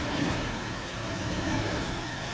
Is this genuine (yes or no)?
no